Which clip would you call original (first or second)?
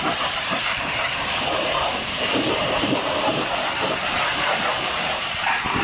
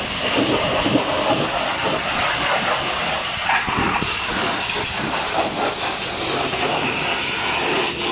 second